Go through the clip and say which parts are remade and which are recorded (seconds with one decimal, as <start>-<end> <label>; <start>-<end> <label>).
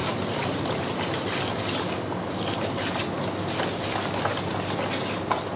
0.0-0.8 remade; 0.8-5.6 recorded